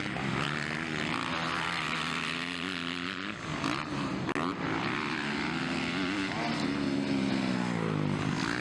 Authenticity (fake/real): real